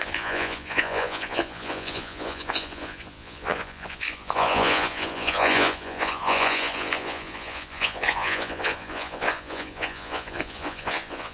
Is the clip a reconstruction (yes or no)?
yes